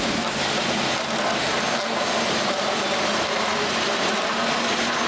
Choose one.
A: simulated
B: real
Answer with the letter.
B